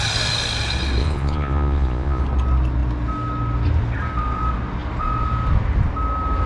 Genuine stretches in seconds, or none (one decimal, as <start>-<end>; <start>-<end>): 0.0-1.0; 2.2-6.5